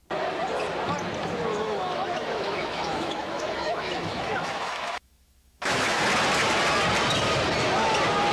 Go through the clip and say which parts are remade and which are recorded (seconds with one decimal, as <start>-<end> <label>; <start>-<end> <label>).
0.0-1.5 recorded; 1.5-6.0 remade; 6.0-8.3 recorded

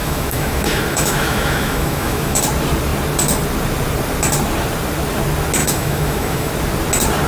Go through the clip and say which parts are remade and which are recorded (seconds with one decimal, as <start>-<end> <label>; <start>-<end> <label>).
0.0-2.4 remade; 2.4-5.6 recorded; 5.6-6.5 remade; 6.5-7.3 recorded

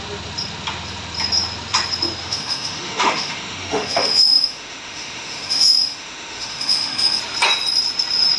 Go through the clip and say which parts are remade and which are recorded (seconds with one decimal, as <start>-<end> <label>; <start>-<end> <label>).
0.0-2.2 recorded; 2.2-7.2 remade; 7.2-8.4 recorded

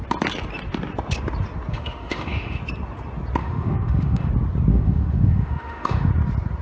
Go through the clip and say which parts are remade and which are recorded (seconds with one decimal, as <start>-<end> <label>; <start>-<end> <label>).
0.0-1.7 recorded; 1.7-2.6 remade; 2.6-3.4 recorded; 3.4-4.3 remade; 4.3-4.7 recorded; 4.7-6.1 remade; 6.1-6.6 recorded

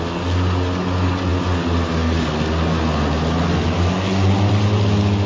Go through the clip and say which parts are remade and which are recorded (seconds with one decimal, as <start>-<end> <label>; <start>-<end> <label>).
0.0-5.3 recorded